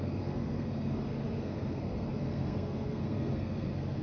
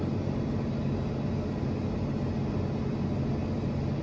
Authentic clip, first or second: second